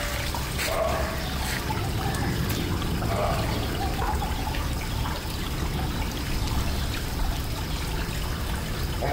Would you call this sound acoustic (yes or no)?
yes